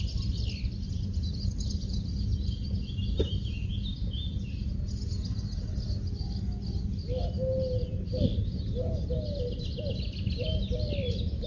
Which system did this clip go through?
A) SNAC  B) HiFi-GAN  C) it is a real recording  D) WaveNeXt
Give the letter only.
C